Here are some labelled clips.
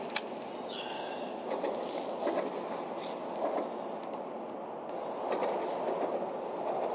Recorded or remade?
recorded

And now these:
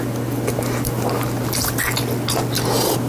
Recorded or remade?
recorded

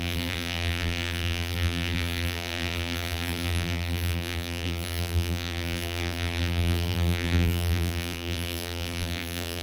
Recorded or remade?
remade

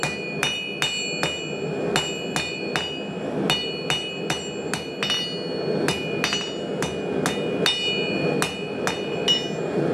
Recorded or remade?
recorded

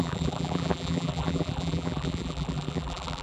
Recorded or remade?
remade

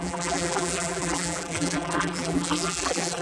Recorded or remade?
remade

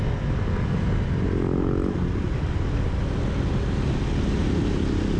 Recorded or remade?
recorded